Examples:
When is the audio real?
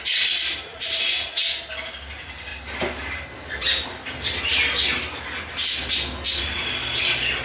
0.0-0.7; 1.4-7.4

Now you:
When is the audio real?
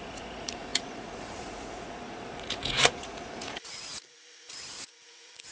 none